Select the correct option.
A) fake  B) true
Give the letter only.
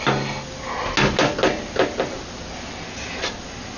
B